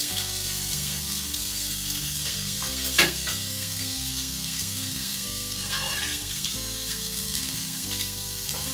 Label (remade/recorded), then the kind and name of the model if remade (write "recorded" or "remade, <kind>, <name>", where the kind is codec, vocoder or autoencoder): remade, codec, SNAC